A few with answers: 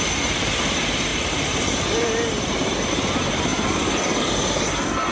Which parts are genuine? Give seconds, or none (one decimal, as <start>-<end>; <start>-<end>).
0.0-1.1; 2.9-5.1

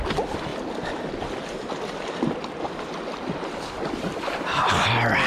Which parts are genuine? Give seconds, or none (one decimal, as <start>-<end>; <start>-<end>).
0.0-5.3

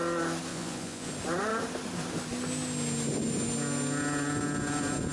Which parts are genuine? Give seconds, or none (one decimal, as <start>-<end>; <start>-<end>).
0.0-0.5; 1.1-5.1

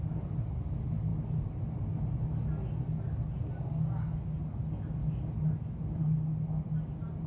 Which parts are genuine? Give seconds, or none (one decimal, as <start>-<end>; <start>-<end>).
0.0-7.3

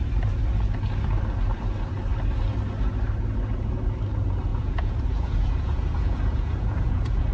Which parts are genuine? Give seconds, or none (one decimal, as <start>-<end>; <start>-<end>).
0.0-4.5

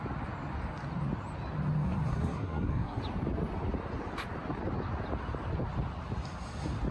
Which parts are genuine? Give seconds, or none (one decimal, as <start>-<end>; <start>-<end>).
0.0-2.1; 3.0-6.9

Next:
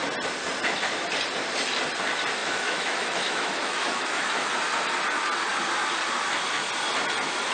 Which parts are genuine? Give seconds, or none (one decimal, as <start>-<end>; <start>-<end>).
0.0-2.4; 4.5-7.5